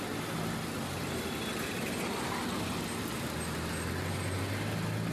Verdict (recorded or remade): recorded